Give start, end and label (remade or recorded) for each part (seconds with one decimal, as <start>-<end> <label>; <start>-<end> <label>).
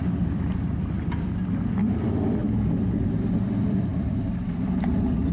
0.0-2.4 remade; 2.4-3.5 recorded; 3.5-5.3 remade